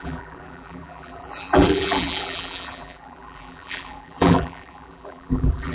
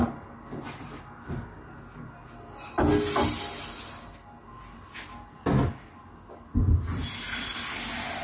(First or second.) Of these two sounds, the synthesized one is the first